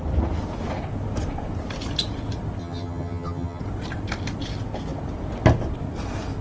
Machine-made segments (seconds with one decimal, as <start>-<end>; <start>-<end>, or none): 2.6-3.6